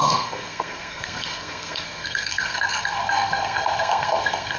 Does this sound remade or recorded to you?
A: remade